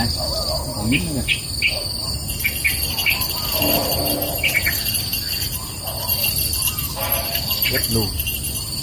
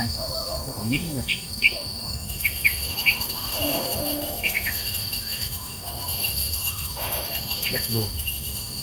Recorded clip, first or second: first